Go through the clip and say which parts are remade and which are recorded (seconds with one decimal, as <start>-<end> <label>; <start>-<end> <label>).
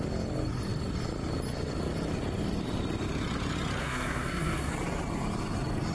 0.0-3.8 recorded; 3.8-4.7 remade; 4.7-5.9 recorded